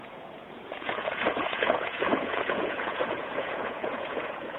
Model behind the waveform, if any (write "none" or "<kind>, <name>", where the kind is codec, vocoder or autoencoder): vocoder, Vocos